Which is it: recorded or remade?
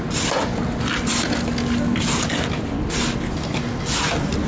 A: recorded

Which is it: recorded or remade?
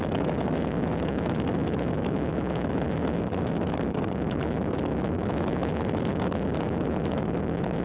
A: remade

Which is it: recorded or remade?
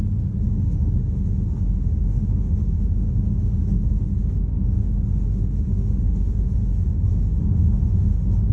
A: remade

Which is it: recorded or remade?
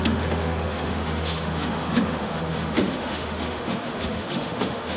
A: remade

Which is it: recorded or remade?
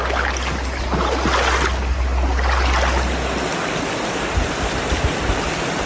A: recorded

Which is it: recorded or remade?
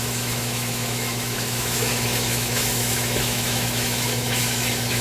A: remade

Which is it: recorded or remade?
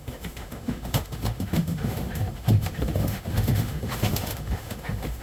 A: remade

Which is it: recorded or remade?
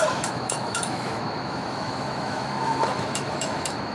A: remade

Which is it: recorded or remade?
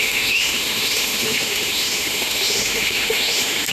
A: remade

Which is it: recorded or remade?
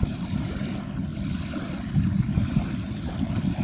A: recorded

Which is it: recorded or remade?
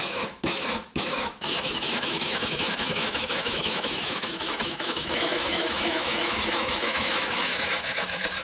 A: remade